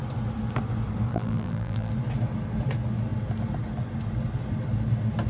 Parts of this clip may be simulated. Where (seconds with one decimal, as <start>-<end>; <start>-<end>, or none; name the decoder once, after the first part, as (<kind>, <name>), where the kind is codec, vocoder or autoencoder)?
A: 1.1-1.9 (vocoder, BigVGAN v2)